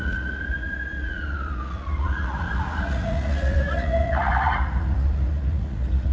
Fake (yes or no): yes